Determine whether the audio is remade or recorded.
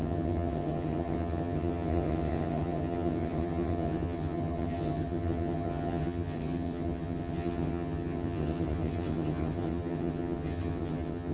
remade